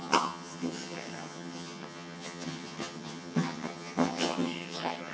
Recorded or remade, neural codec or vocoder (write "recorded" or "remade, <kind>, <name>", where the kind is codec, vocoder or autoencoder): remade, vocoder, HiFi-GAN